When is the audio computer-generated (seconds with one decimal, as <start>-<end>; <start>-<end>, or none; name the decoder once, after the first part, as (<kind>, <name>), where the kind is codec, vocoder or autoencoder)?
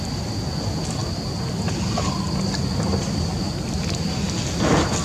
none